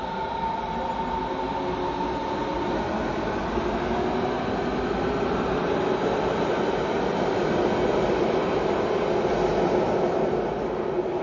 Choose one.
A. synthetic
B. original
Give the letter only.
B